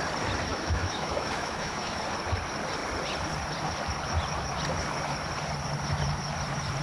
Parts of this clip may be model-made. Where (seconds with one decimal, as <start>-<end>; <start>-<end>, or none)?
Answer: 0.5-2.0

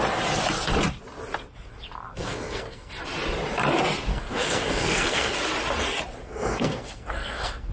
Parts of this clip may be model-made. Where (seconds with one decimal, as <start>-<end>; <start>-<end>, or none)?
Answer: 2.1-2.9; 4.1-5.3; 6.2-7.7

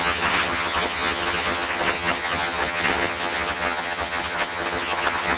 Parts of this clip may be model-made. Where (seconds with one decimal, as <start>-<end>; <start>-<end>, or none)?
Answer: 0.0-5.4

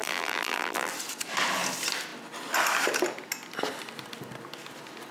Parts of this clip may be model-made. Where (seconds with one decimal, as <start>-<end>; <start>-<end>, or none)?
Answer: 0.0-0.9

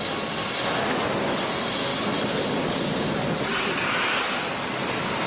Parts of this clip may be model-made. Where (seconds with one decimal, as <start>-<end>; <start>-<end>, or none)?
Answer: none

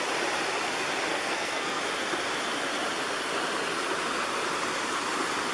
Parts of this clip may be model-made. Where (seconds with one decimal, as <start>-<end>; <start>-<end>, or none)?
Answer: 1.1-1.8

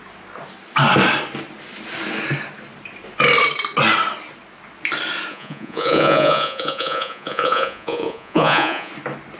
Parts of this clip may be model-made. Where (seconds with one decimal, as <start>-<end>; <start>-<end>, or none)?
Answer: 5.3-8.9